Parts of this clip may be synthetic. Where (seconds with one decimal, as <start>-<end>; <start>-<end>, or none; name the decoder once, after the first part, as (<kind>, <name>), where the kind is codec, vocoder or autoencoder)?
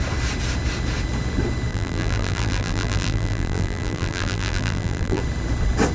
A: 1.7-5.2 (vocoder, BigVGAN v2)